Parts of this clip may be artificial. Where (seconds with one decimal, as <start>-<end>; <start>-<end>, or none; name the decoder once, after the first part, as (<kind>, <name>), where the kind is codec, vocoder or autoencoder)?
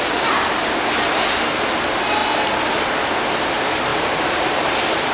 3.9-5.1 (vocoder, BigVGAN v2)